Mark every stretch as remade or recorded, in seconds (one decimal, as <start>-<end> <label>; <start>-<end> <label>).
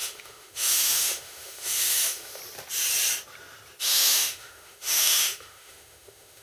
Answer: 0.0-2.4 remade; 2.4-3.8 recorded; 3.8-6.4 remade